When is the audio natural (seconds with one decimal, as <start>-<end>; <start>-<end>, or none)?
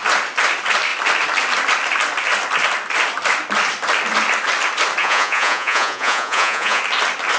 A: 0.0-5.0; 6.8-7.4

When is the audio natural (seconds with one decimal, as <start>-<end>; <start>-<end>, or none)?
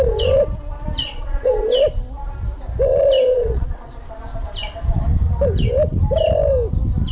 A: 0.0-1.0; 1.6-3.3; 4.0-7.1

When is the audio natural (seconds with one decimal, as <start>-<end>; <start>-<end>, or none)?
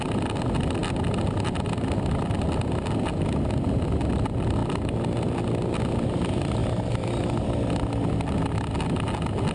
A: 0.0-9.5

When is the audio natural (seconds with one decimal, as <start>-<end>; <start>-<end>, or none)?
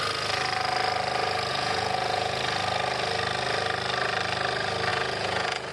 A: 0.0-1.5; 2.4-4.9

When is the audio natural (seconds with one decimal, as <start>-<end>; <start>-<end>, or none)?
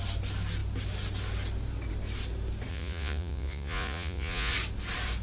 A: 0.0-2.7; 4.5-5.2